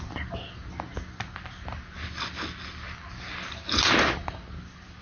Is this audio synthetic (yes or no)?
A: no